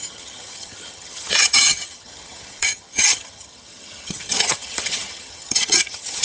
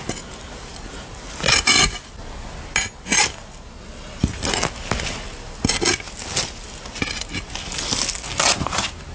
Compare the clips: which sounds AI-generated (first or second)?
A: first